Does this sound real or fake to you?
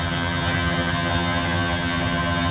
fake